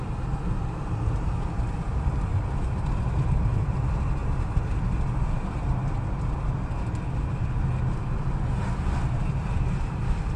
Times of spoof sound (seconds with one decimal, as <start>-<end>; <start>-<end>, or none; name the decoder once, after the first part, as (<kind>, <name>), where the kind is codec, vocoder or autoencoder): 2.3-3.3 (vocoder, BigVGAN v2)